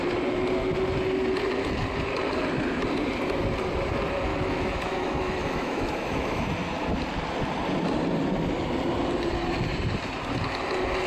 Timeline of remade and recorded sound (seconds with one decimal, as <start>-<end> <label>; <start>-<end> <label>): 0.0-4.3 recorded; 4.3-6.4 remade; 6.4-11.1 recorded